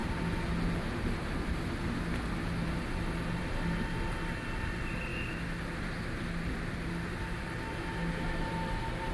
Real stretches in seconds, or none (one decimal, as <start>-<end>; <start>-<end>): 0.0-9.1